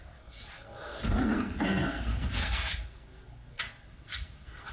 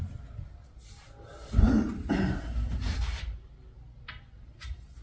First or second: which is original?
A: second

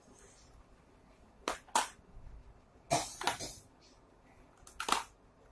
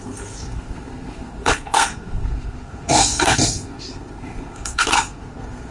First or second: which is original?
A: first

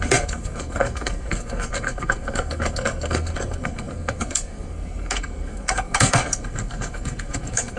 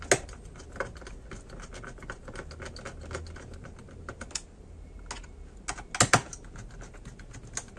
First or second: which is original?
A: second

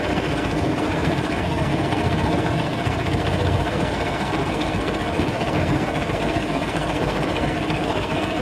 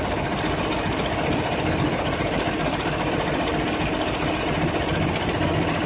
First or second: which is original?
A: second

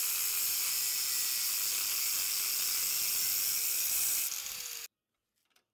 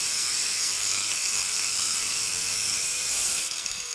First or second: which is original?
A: first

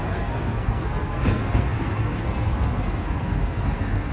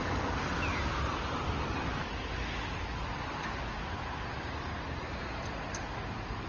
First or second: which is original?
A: second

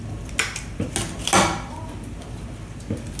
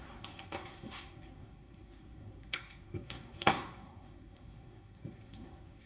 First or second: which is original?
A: first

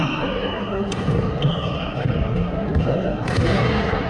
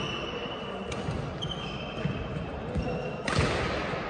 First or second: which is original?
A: second